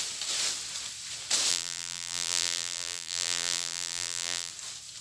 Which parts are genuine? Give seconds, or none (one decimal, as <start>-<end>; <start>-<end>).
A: 0.0-1.5; 4.5-5.0